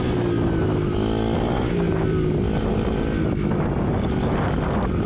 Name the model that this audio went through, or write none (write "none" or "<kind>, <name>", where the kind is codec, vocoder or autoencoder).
none